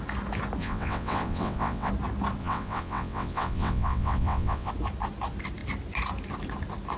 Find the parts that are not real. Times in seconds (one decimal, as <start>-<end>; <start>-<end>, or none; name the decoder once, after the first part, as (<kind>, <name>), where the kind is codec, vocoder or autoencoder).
0.6-1.9 (vocoder, WaveNeXt); 2.4-4.7